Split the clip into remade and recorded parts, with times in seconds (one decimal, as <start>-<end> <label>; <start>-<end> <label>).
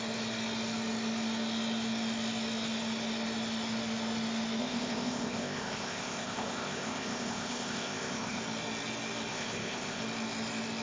0.0-4.6 recorded; 4.6-8.4 remade; 8.4-9.3 recorded; 9.3-10.0 remade; 10.0-10.8 recorded